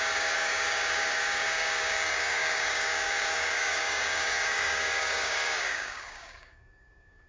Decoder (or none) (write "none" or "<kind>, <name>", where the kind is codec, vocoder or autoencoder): codec, DAC